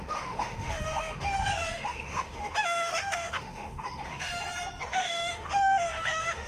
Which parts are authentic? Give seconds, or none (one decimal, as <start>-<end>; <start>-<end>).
4.4-4.9